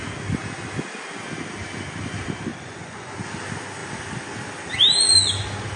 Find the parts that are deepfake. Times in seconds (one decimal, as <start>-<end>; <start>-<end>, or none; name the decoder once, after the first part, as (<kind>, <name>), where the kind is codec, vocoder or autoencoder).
2.5-3.1 (vocoder, Vocos)